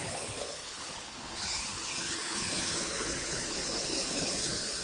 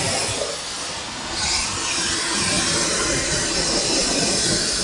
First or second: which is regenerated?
first